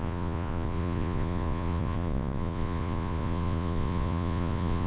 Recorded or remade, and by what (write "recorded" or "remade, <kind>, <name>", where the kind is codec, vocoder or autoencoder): remade, vocoder, Vocos